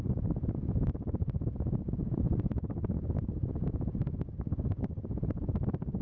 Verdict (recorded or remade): recorded